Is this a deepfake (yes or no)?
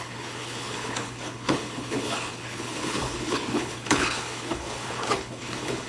yes